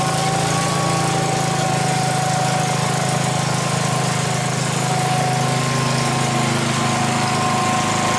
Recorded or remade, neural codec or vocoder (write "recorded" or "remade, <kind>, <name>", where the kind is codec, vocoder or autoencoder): recorded